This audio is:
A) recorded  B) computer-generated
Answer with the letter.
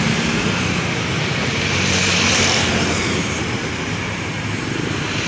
B